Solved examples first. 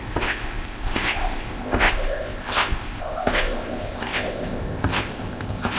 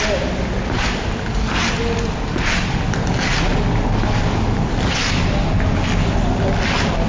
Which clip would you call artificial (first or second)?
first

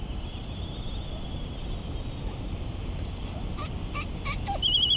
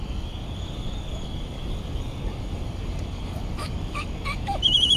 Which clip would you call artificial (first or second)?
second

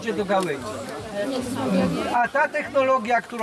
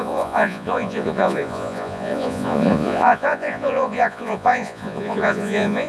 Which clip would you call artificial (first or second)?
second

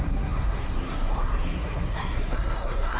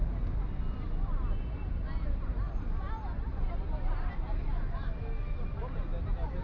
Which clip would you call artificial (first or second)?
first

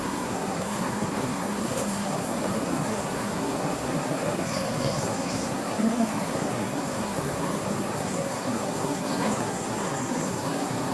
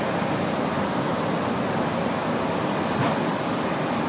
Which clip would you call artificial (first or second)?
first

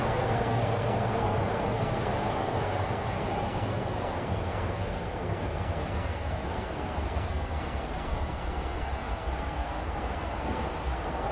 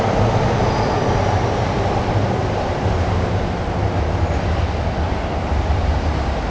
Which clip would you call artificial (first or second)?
first